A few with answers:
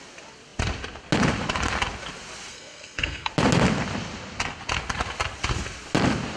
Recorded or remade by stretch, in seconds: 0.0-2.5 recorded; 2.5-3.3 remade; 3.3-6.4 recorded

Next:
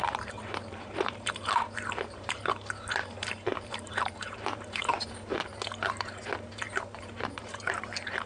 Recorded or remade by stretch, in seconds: 0.0-5.3 remade; 5.3-5.9 recorded; 5.9-8.3 remade

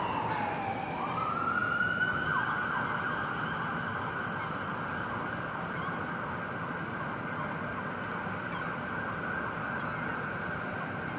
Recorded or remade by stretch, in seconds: 0.0-11.2 recorded

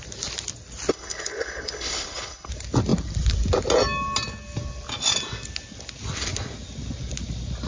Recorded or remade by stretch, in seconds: 0.0-0.9 recorded; 0.9-2.5 remade; 2.5-7.7 recorded

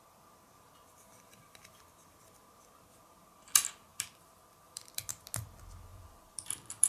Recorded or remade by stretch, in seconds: 0.0-3.9 recorded; 3.9-5.1 remade; 5.1-5.9 recorded; 5.9-6.9 remade

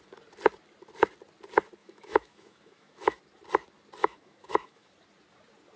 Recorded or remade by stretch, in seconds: 0.0-1.8 recorded; 1.8-3.2 remade; 3.2-4.0 recorded; 4.0-4.9 remade; 4.9-5.8 recorded

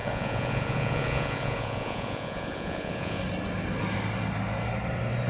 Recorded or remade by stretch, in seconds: 0.0-3.2 remade; 3.2-5.3 recorded